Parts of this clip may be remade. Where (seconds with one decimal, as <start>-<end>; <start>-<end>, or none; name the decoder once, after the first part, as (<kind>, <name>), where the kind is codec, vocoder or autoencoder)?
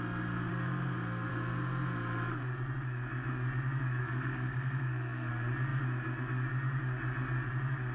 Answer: 0.5-1.3 (codec, SNAC); 4.0-5.3